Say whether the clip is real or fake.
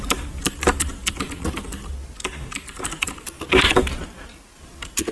real